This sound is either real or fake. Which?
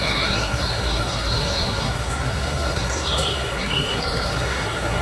fake